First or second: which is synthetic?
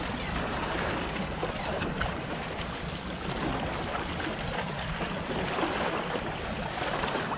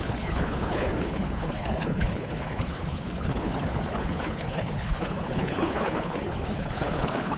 second